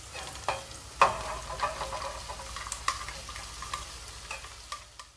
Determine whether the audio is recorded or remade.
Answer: recorded